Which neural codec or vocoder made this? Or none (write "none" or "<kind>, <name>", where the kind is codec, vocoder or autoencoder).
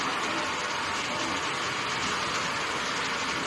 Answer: none